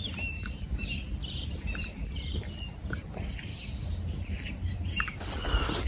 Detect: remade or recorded recorded